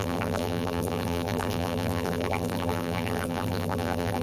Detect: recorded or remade remade